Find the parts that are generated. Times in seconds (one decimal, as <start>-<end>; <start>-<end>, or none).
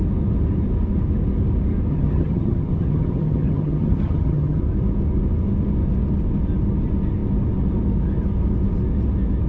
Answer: 1.9-4.6